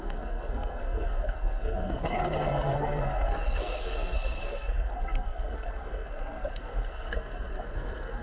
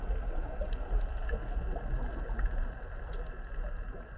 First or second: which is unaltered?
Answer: second